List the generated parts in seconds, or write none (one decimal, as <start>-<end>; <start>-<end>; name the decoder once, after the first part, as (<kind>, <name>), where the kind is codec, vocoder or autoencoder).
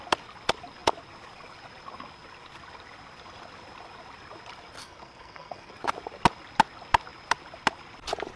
4.8-5.7 (codec, SNAC)